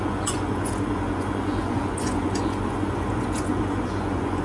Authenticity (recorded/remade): remade